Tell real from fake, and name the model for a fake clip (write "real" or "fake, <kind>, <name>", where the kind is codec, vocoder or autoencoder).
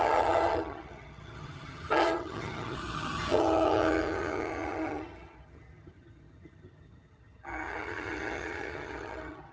fake, vocoder, HiFi-GAN